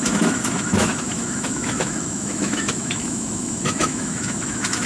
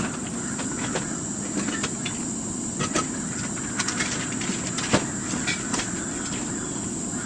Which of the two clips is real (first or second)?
second